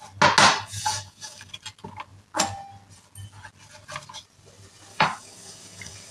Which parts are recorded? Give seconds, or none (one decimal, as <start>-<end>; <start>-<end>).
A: 0.0-0.5; 1.5-4.9